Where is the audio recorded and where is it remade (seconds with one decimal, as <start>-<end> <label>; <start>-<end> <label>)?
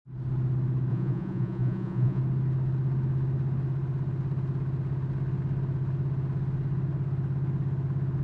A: 0.0-0.9 recorded; 0.9-2.2 remade; 2.2-8.2 recorded